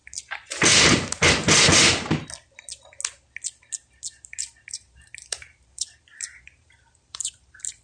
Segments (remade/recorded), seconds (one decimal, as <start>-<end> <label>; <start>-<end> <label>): 0.0-4.7 recorded; 4.7-7.8 remade